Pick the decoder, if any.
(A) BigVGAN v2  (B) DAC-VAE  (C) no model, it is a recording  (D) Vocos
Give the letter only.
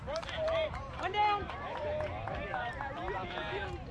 A